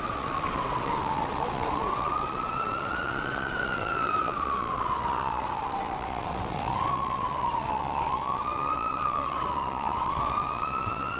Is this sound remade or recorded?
remade